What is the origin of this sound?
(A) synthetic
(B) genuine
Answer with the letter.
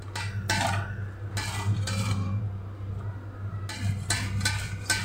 B